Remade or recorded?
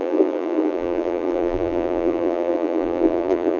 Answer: remade